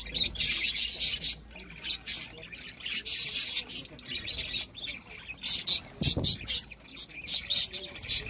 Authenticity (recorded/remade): recorded